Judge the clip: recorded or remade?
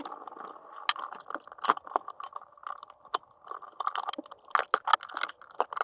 recorded